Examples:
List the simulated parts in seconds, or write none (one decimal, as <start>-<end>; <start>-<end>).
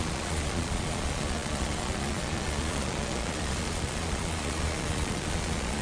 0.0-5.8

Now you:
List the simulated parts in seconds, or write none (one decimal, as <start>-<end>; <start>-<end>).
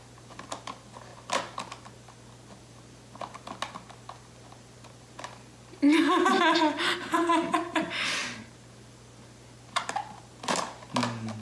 none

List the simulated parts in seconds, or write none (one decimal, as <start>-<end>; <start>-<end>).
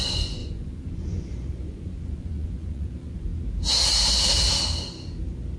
0.0-3.3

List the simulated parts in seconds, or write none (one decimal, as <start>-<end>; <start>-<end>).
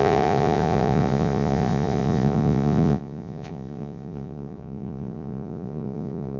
0.0-6.4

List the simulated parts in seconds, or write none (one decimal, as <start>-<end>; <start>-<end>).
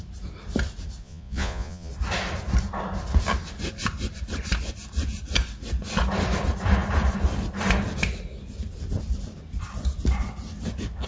1.0-1.9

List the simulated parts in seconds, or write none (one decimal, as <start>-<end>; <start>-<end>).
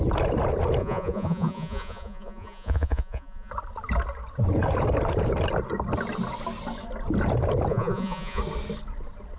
0.8-3.5; 7.7-8.4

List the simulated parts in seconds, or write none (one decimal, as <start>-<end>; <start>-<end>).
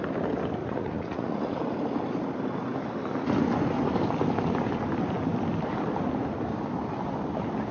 0.6-1.6